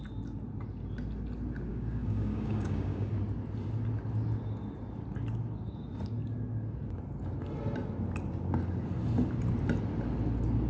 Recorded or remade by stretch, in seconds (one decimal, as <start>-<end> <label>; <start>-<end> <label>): 0.0-1.7 recorded; 1.7-3.1 remade; 3.1-10.7 recorded